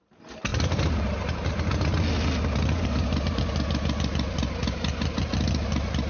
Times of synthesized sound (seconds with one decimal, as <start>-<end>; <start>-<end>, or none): 0.5-1.5; 2.8-3.4